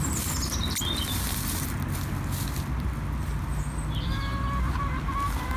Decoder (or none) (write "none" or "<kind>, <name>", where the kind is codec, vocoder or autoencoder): none